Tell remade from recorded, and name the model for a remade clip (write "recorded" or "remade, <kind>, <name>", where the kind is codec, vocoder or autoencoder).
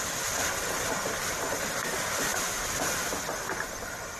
recorded